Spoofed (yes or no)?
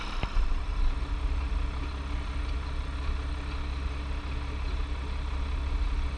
no